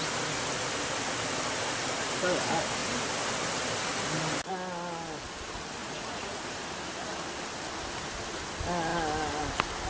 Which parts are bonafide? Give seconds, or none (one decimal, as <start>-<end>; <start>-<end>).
0.0-5.8; 6.4-9.9